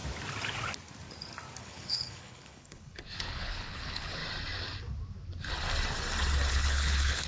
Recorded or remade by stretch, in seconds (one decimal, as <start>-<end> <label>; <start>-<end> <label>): 0.0-1.6 recorded; 1.6-4.2 remade; 4.2-6.5 recorded; 6.5-7.3 remade